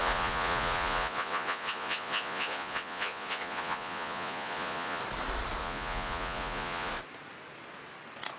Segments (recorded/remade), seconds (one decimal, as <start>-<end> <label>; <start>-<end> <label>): 0.0-5.0 remade; 5.0-5.6 recorded; 5.6-6.9 remade; 6.9-8.4 recorded